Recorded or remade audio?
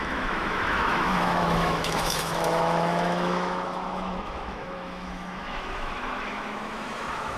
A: remade